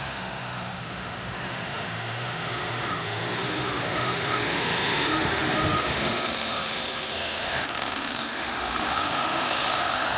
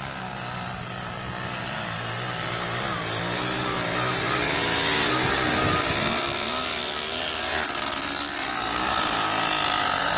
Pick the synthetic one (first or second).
first